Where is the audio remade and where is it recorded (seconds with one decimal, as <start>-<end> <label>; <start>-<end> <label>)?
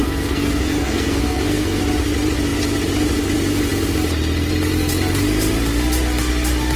0.0-1.8 remade; 1.8-6.8 recorded